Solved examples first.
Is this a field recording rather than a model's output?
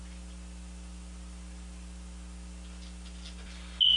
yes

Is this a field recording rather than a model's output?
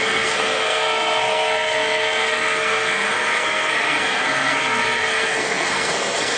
no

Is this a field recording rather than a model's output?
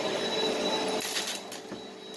yes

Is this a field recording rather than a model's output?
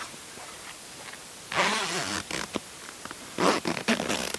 yes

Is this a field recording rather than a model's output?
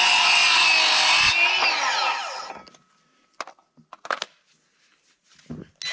yes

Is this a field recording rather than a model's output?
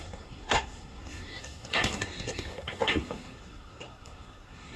no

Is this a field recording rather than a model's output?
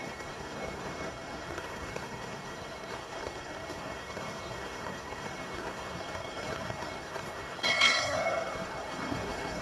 no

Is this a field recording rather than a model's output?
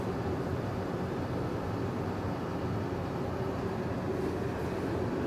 yes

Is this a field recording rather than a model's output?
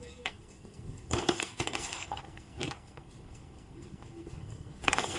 no